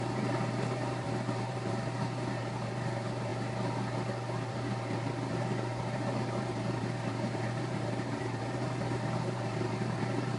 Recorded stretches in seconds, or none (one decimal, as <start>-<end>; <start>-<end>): 3.3-4.5

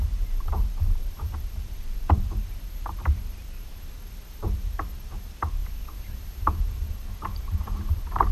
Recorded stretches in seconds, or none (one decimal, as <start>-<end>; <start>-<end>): 5.6-6.6

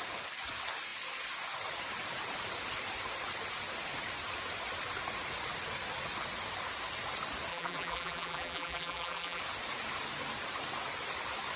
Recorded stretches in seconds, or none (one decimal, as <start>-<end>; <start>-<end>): 0.0-7.5; 9.4-11.6

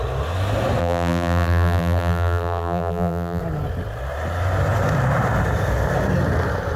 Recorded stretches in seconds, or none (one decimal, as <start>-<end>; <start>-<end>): 0.0-0.8; 3.4-6.8

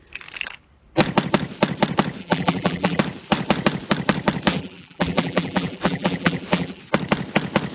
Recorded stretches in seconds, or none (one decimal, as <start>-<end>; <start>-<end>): 0.0-2.2; 3.0-4.5; 6.8-7.7